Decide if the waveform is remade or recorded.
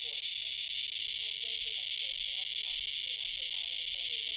recorded